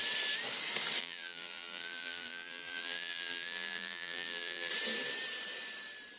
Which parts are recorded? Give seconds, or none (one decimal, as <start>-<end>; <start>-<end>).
0.0-1.0; 4.7-6.2